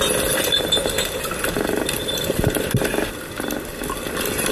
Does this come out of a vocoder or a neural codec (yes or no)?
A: no